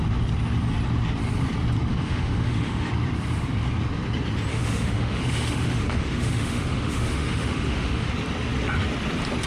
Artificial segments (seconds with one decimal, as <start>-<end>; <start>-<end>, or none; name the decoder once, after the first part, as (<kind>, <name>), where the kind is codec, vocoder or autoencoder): 1.9-2.9 (autoencoder, DAC-VAE); 4.5-8.1